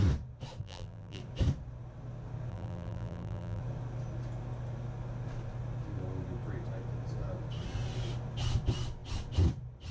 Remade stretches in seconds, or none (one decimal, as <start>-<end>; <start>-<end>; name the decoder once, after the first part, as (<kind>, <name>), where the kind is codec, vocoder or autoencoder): 0.6-1.2 (vocoder, BigVGAN v2); 2.5-3.6